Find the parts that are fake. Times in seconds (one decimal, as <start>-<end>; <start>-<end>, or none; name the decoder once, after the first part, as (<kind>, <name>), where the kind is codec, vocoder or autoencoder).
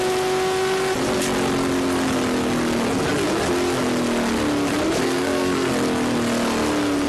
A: 5.0-5.7 (codec, SNAC)